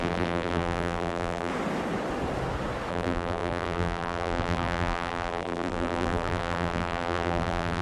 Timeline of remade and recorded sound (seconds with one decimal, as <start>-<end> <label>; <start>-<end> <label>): 0.0-1.5 remade; 1.5-2.9 recorded; 2.9-7.8 remade